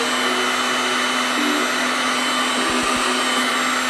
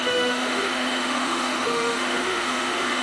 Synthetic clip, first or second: second